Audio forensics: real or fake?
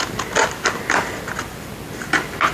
real